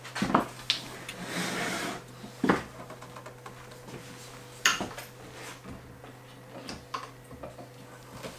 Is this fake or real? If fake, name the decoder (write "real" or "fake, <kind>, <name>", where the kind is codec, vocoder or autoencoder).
real